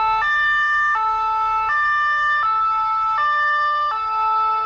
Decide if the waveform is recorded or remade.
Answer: recorded